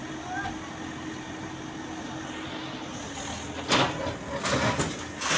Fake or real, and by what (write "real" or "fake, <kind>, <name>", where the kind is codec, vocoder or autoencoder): real